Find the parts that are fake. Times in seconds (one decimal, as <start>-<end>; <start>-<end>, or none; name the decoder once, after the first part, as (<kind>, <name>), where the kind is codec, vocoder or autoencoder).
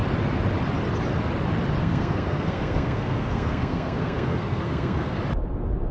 1.8-5.2 (codec, SNAC)